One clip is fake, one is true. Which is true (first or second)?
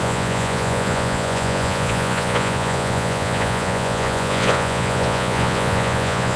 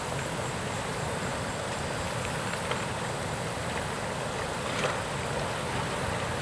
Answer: second